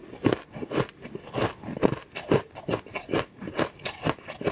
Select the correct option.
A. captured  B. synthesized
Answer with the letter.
A